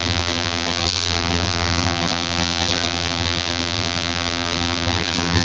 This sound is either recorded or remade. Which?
remade